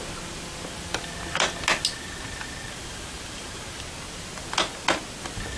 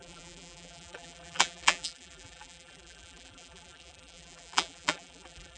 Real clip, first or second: first